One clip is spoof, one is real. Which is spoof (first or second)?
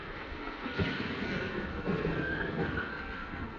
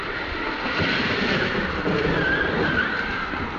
first